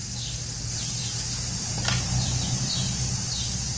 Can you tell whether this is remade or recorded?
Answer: recorded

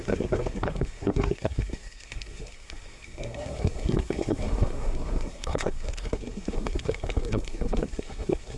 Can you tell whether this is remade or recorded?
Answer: remade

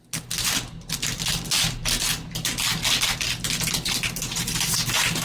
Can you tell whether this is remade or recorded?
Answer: recorded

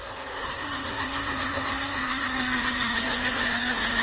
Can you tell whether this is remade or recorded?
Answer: remade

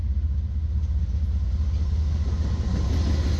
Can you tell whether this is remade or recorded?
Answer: recorded